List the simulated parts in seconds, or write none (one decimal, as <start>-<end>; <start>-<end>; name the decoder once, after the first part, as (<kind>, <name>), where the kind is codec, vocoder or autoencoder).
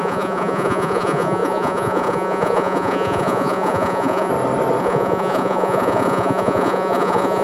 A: 0.0-4.3 (vocoder, Vocos); 4.8-7.4